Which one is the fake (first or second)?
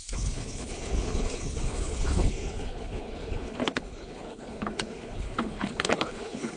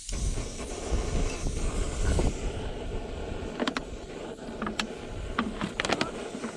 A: first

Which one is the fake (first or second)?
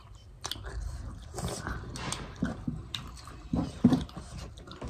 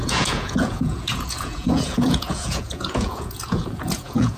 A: second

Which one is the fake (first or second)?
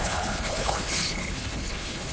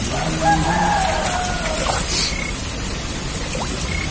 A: first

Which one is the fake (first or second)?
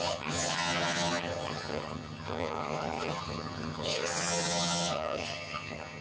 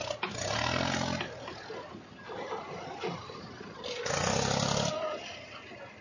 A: first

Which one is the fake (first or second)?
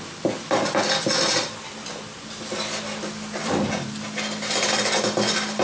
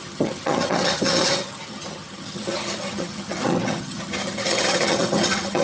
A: second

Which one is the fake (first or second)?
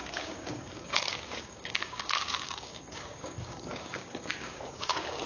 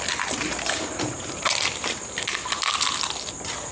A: first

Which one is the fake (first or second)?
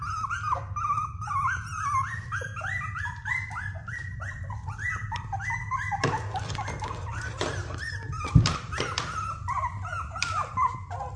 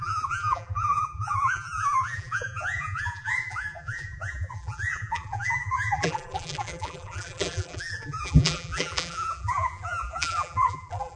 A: second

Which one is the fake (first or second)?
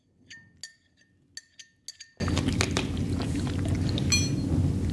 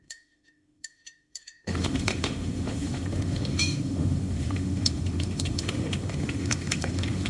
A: second